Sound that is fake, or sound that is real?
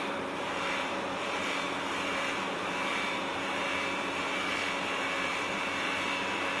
fake